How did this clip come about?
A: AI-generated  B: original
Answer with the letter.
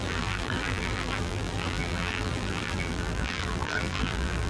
A